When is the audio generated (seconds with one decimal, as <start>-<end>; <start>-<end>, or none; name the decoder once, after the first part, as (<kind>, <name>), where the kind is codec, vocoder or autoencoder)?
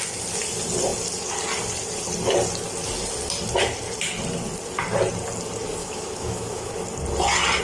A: 5.8-6.7 (autoencoder, DAC-VAE)